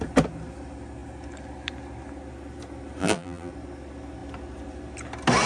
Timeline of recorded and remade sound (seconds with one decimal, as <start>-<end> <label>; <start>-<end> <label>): 0.0-3.0 recorded; 3.0-3.5 remade; 3.5-5.5 recorded